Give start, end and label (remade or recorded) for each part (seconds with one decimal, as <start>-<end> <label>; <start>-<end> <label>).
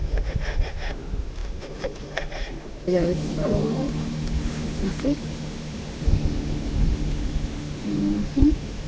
0.0-8.9 remade